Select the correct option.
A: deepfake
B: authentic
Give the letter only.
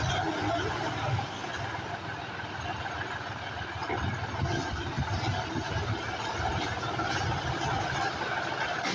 B